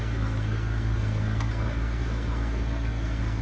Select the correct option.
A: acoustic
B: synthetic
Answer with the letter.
B